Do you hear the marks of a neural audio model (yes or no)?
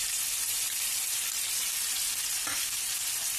yes